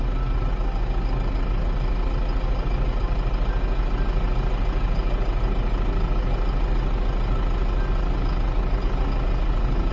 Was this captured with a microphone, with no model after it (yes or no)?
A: yes